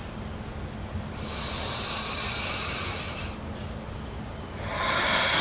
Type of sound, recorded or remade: recorded